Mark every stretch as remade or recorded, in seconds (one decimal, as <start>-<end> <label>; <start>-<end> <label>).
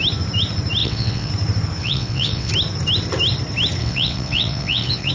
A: 0.0-0.8 recorded; 0.8-1.3 remade; 1.3-1.8 recorded; 1.8-2.5 remade; 2.5-3.8 recorded; 3.8-5.1 remade